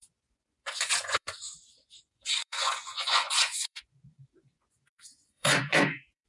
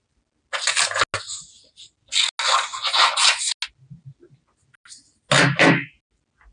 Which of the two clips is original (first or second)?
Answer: second